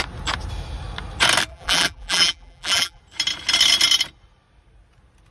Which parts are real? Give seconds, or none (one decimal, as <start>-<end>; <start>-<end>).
0.0-1.5; 3.0-5.3